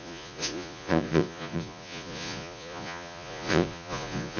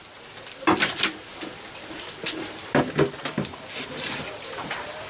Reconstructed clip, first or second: first